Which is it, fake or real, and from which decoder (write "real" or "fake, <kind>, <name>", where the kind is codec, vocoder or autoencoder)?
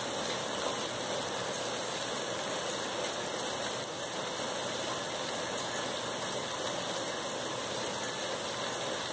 real